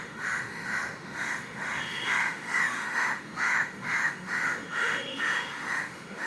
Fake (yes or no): yes